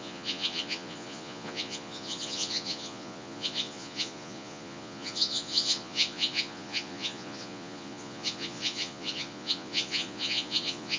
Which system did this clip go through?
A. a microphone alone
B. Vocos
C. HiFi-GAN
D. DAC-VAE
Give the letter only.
B